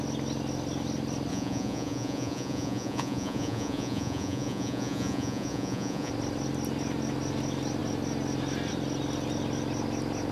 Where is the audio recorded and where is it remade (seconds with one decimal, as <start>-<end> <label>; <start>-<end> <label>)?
0.0-1.3 recorded; 1.3-6.1 remade; 6.1-10.3 recorded